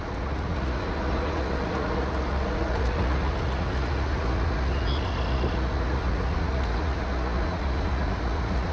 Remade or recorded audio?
remade